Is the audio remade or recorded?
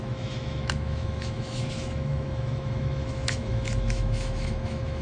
remade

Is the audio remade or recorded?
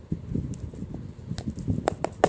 recorded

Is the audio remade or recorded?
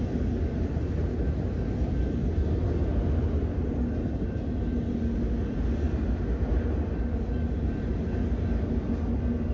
recorded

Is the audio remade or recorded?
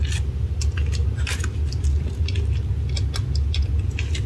recorded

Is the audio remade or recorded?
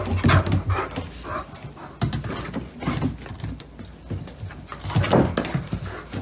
recorded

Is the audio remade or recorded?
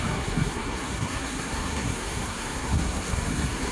remade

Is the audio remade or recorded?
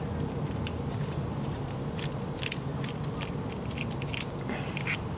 recorded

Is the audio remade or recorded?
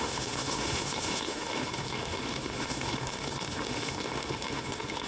remade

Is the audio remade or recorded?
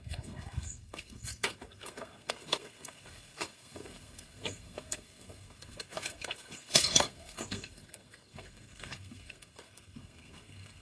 remade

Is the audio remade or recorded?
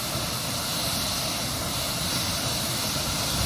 recorded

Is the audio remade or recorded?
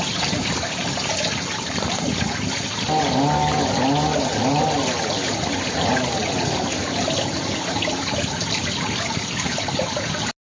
recorded